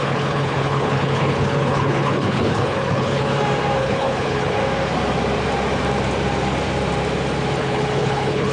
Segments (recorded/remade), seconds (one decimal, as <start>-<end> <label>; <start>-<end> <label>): 0.0-3.3 remade; 3.3-3.8 recorded; 3.8-4.6 remade; 4.6-7.6 recorded; 7.6-8.5 remade

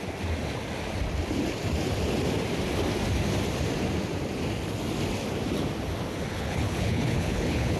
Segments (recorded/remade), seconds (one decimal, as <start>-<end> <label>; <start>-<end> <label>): 0.0-6.3 recorded; 6.3-7.8 remade